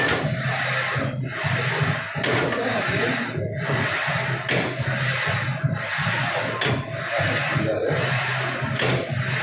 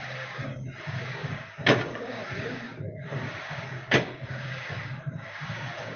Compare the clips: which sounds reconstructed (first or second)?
second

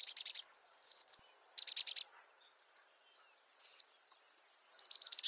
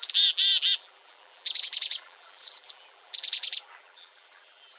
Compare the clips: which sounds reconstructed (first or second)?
second